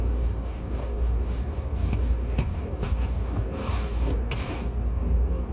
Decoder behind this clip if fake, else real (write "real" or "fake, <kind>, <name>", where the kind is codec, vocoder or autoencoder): fake, codec, DAC